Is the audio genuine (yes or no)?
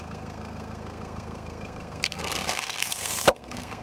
no